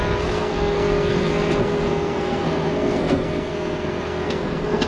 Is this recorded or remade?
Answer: remade